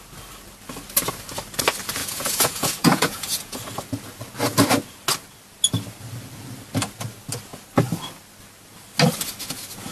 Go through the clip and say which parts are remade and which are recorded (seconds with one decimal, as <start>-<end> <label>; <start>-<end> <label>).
0.0-2.0 recorded; 2.0-3.6 remade; 3.6-9.9 recorded